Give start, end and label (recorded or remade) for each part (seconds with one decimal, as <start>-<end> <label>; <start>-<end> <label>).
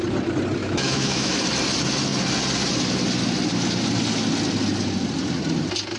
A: 0.0-0.6 recorded; 0.6-1.4 remade; 1.4-6.0 recorded